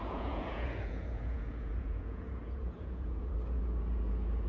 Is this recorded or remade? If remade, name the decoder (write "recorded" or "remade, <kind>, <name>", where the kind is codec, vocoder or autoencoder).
remade, vocoder, Vocos